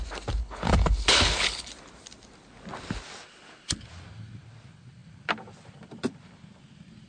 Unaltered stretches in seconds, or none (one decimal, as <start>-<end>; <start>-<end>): 0.0-0.4; 1.7-7.1